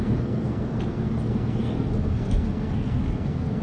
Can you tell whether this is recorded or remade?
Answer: remade